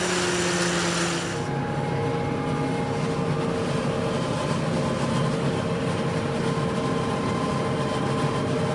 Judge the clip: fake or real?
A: real